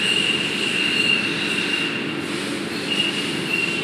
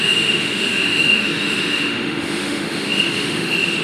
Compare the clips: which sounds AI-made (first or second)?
second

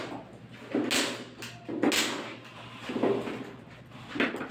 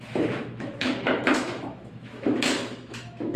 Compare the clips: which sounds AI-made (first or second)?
second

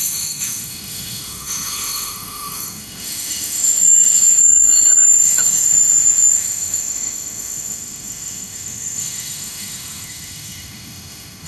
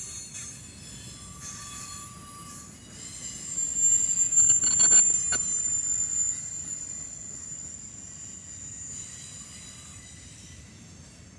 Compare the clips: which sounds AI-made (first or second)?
first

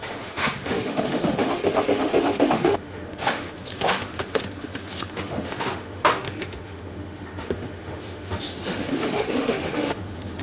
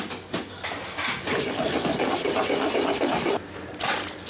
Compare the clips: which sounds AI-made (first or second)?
first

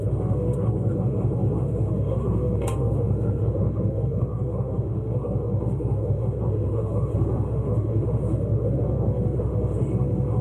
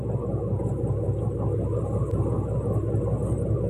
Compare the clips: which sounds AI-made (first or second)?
first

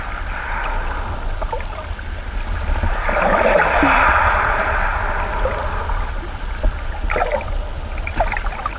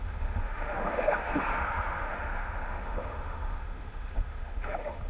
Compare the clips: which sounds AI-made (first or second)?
second